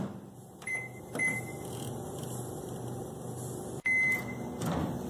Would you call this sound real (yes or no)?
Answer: no